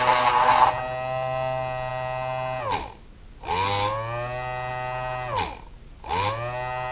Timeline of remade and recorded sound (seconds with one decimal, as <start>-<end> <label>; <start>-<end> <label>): 0.0-6.9 recorded